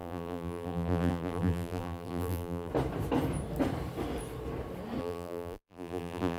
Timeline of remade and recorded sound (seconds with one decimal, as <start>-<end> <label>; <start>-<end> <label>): 0.0-2.7 remade; 2.7-5.0 recorded; 5.0-6.4 remade